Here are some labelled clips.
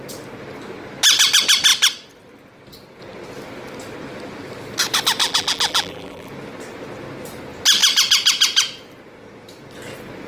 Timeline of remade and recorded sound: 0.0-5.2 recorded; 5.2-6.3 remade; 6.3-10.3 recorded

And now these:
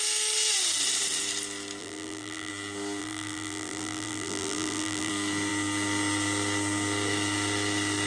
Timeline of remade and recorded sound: 0.0-1.8 recorded; 1.8-2.5 remade; 2.5-3.0 recorded; 3.0-5.1 remade; 5.1-8.1 recorded

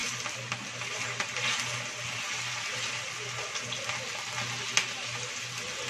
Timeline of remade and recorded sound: 0.0-5.9 recorded